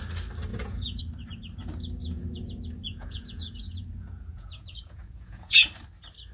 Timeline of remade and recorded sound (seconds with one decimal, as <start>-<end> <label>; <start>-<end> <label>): 0.0-0.5 recorded; 0.5-1.0 remade; 1.0-2.0 recorded; 2.0-5.7 remade; 5.7-6.3 recorded